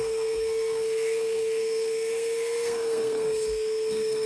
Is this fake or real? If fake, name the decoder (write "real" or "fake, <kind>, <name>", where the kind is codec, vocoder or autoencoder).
fake, codec, SNAC